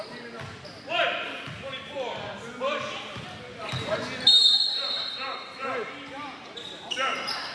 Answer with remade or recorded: recorded